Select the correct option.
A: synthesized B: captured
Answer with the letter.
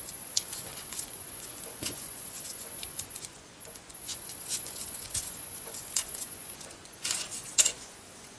A